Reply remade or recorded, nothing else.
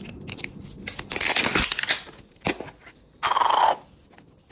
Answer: recorded